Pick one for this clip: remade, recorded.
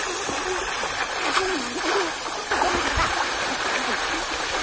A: recorded